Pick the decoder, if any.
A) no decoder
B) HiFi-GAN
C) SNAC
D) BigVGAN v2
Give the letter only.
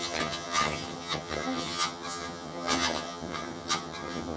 B